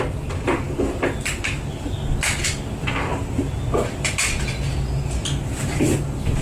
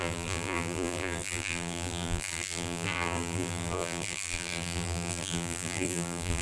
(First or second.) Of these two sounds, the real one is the first